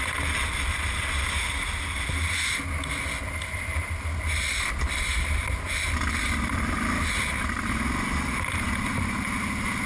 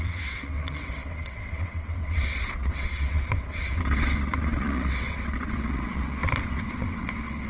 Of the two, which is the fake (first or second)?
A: second